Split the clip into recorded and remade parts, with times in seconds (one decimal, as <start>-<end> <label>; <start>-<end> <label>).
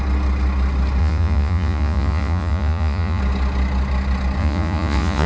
0.0-1.0 recorded; 1.0-3.2 remade; 3.2-4.4 recorded; 4.4-5.3 remade